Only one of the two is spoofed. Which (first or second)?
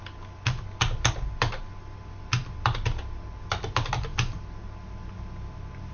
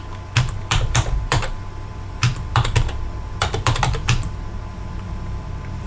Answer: second